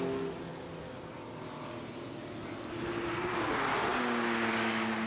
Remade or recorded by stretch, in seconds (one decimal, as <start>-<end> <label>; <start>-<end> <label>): 0.0-5.1 recorded